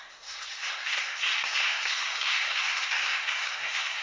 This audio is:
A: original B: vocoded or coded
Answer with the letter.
B